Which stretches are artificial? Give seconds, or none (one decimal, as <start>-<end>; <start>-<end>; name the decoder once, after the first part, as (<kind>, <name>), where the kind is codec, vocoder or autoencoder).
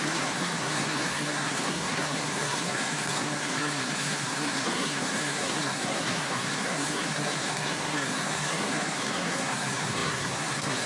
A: 0.0-10.9 (codec, SNAC)